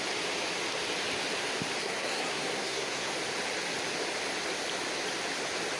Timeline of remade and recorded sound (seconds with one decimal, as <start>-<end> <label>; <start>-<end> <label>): 0.0-1.8 recorded; 1.8-3.1 remade; 3.1-5.8 recorded